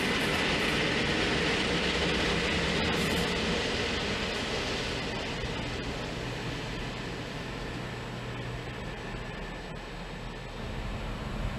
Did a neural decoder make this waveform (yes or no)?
no